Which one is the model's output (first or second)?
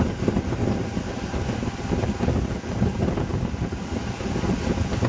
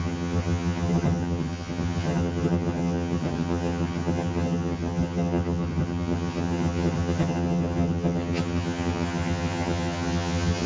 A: second